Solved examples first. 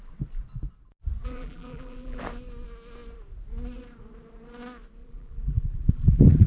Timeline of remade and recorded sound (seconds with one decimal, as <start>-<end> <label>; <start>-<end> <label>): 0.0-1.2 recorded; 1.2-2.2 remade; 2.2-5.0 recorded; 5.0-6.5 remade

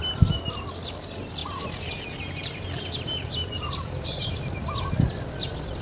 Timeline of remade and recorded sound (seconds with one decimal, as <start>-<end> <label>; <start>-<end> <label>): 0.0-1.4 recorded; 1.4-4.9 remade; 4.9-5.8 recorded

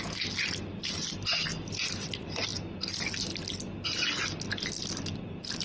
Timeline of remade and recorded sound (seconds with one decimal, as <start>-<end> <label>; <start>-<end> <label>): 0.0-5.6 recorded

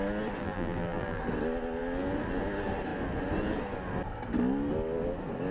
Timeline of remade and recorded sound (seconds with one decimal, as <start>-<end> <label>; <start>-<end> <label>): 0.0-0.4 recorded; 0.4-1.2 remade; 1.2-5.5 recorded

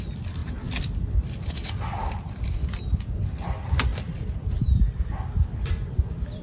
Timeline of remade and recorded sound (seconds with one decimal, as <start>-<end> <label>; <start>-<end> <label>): 0.0-6.4 recorded